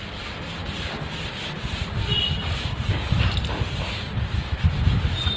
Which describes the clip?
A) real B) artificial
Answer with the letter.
B